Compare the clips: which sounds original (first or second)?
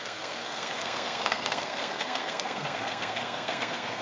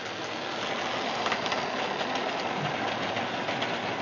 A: second